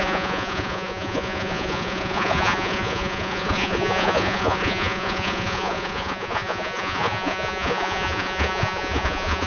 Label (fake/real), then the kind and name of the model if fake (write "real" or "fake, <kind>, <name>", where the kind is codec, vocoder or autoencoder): fake, vocoder, Vocos